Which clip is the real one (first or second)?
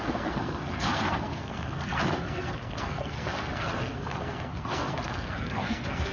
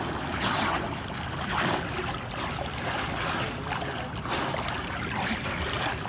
second